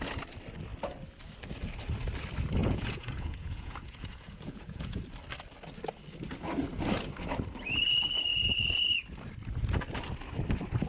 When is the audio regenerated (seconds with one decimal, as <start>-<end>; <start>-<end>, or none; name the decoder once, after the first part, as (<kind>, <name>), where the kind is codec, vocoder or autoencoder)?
2.6-5.0 (vocoder, Vocos)